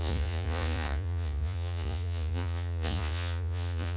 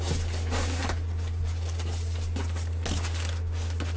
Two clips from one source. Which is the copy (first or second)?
first